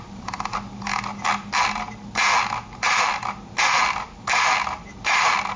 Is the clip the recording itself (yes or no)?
yes